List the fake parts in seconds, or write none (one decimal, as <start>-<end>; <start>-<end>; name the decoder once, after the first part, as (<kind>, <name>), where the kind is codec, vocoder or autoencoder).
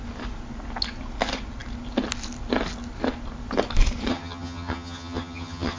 4.1-5.8 (vocoder, HiFi-GAN)